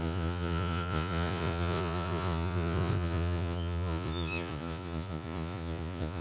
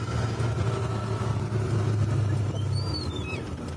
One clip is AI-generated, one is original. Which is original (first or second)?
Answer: second